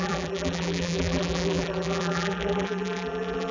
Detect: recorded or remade remade